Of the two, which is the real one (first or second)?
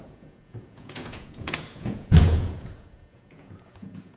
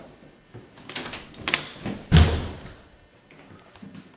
second